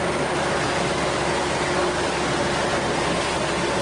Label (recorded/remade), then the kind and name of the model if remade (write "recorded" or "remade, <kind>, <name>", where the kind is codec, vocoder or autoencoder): recorded